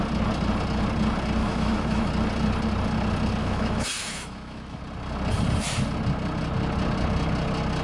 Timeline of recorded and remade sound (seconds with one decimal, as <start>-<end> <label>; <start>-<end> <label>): 0.0-1.4 recorded; 1.4-2.1 remade; 2.1-3.4 recorded; 3.4-4.8 remade; 4.8-7.8 recorded